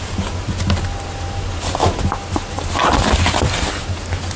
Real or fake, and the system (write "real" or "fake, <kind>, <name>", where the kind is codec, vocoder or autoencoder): real